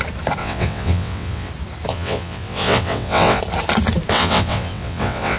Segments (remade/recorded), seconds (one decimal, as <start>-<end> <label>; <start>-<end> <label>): 0.0-0.4 recorded; 0.4-1.5 remade; 1.5-1.9 recorded; 1.9-3.4 remade; 3.4-4.1 recorded; 4.1-5.4 remade